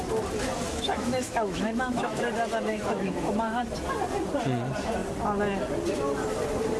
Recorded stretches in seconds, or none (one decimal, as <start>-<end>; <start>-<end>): 0.0-0.7; 2.2-2.7; 3.6-6.8